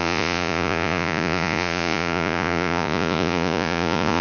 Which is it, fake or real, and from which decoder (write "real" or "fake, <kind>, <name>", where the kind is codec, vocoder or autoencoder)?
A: fake, vocoder, Vocos